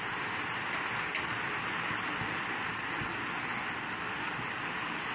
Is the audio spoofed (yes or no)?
no